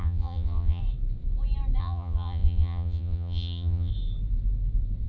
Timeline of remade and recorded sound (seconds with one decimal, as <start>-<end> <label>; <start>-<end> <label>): 0.0-0.8 remade; 0.8-1.8 recorded; 1.8-3.9 remade; 3.9-5.1 recorded